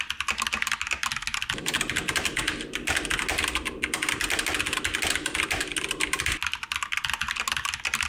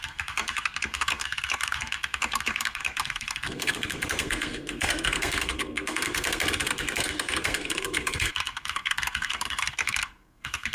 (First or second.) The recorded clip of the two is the first